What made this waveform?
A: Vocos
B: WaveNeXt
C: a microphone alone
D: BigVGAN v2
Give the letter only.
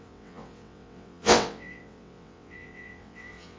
B